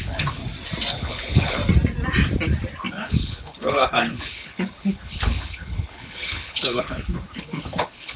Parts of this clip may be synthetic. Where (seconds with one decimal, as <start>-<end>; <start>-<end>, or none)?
0.0-0.4; 0.9-1.6; 2.9-8.2